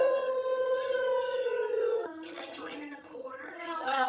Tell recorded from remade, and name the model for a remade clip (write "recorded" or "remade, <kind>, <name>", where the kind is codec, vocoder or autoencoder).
remade, vocoder, HiFi-GAN